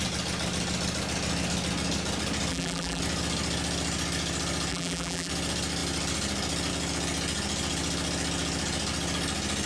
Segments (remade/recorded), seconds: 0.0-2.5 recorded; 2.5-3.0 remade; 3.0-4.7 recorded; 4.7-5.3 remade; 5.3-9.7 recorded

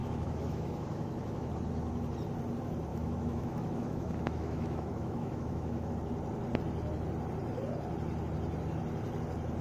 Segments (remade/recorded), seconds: 0.0-1.5 remade; 1.5-2.9 recorded; 2.9-5.9 remade; 5.9-9.6 recorded

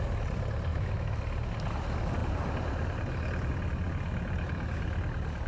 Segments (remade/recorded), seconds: 0.0-0.7 recorded; 0.7-1.2 remade; 1.2-5.5 recorded

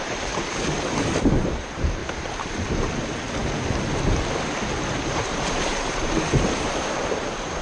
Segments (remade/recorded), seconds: 0.0-2.0 remade; 2.0-5.0 recorded; 5.0-7.6 remade